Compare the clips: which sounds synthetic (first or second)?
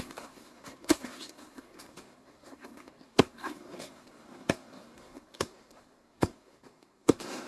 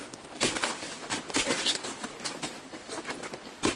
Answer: first